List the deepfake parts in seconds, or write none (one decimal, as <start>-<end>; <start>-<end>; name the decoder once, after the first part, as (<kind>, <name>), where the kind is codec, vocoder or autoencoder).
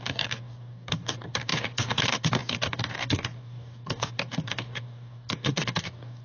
0.0-6.2 (codec, DAC)